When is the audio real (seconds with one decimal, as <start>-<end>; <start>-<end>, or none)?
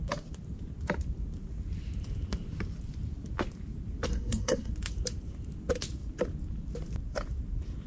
0.0-4.1; 4.7-7.9